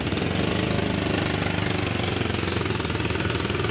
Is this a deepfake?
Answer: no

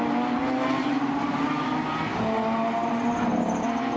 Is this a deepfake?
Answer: no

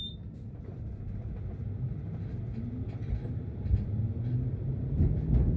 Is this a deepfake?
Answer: no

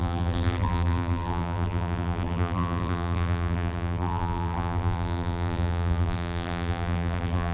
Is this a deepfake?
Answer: yes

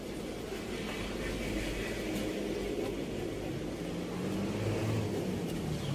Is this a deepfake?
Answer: no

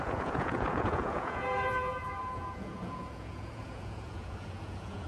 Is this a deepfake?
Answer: yes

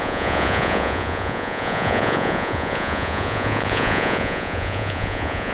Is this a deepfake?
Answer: yes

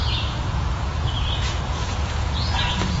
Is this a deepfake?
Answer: yes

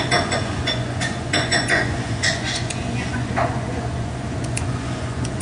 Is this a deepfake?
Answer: yes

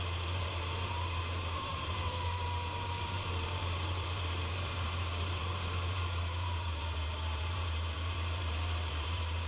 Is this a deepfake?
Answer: yes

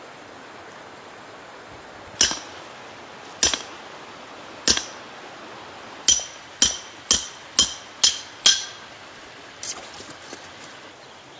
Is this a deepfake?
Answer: no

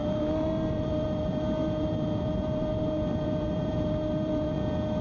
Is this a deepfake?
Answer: yes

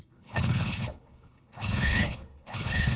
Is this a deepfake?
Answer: yes